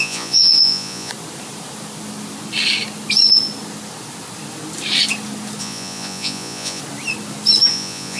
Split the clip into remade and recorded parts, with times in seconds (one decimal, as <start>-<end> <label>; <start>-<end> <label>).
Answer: 0.0-1.1 remade; 1.1-5.6 recorded; 5.6-6.8 remade; 6.8-7.7 recorded; 7.7-8.2 remade